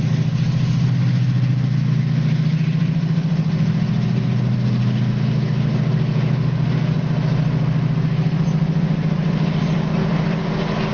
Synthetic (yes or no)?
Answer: no